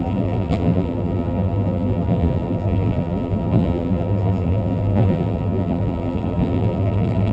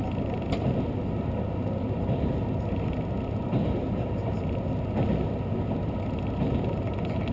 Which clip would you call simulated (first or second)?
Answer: first